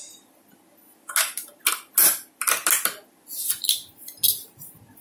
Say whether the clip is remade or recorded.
recorded